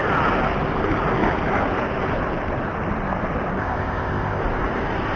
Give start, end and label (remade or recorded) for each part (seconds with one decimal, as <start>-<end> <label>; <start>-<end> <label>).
0.0-3.6 recorded; 3.6-4.4 remade; 4.4-5.2 recorded